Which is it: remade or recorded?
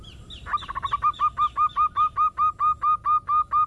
recorded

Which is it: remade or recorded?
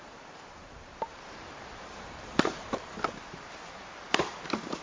remade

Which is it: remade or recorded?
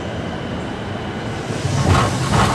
recorded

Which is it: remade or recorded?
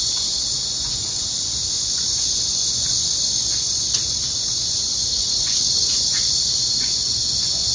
remade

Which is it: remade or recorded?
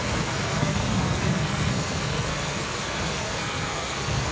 remade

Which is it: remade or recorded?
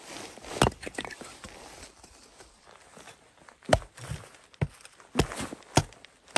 recorded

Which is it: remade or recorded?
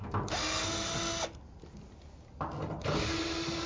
recorded